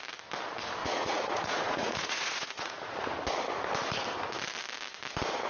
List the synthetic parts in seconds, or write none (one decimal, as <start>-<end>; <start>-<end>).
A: 0.8-3.0